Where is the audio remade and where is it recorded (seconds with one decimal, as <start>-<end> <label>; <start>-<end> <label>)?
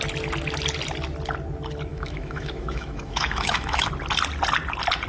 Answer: 0.0-1.9 recorded; 1.9-3.9 remade; 3.9-5.1 recorded